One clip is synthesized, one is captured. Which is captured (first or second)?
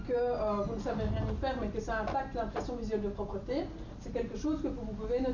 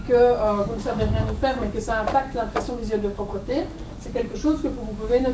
first